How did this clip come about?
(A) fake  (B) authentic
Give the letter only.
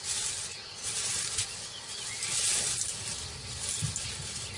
B